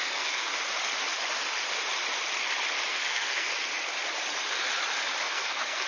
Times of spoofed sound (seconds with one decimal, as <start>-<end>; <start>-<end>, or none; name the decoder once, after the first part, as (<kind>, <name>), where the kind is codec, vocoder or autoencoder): 0.0-0.5 (codec, SNAC); 2.9-3.5; 5.2-5.9